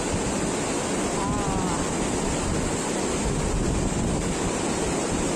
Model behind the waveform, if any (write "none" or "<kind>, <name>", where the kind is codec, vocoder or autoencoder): none